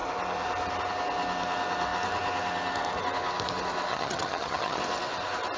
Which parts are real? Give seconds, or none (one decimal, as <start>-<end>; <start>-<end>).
0.0-3.9; 4.8-5.6